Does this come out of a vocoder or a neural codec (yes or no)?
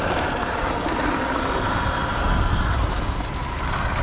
no